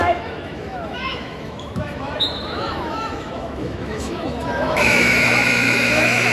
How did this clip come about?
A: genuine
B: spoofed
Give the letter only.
B